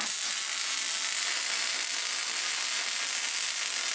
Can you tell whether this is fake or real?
real